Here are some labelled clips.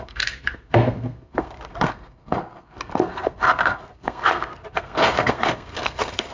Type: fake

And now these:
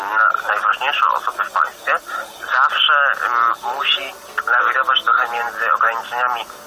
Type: real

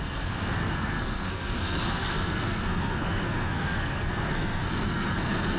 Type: fake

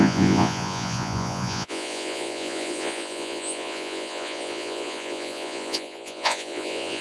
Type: fake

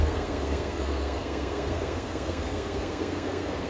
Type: fake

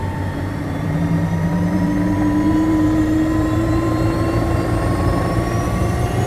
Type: fake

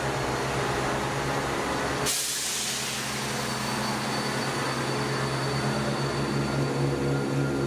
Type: real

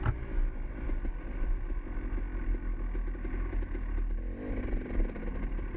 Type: real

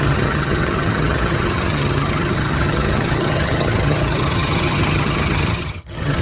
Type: fake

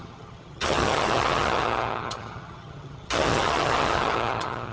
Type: fake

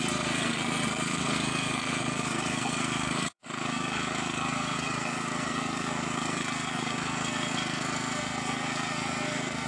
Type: fake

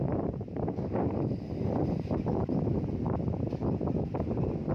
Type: real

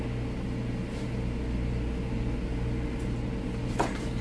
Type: real